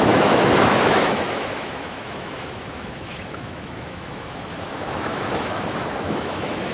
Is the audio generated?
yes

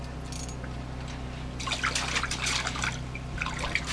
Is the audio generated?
no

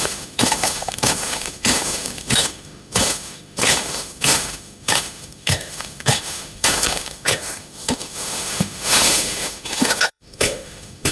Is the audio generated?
yes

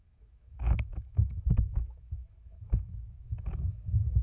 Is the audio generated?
yes